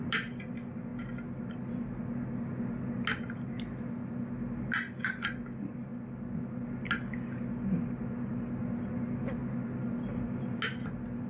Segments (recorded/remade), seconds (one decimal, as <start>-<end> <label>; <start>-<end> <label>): 0.0-11.3 recorded